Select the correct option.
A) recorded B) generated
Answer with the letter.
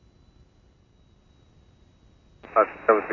A